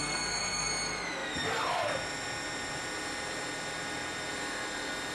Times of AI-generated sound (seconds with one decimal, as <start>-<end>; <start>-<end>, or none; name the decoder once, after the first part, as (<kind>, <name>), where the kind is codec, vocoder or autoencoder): 0.0-0.7 (codec, SNAC)